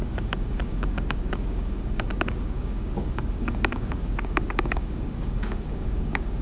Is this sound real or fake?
fake